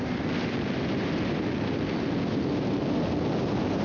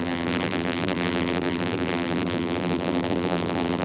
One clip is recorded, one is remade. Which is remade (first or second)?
second